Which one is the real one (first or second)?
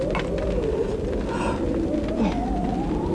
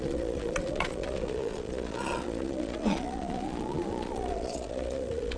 first